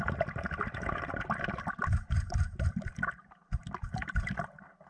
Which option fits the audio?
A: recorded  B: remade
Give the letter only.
B